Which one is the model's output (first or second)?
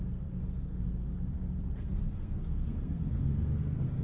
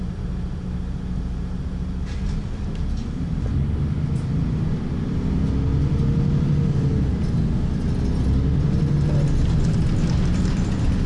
first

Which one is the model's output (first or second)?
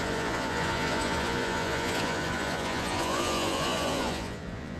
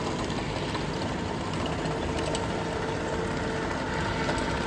first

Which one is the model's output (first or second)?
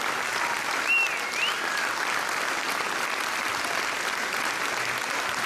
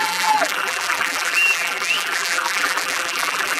second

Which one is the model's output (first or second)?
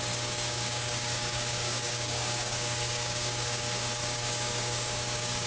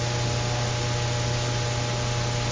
first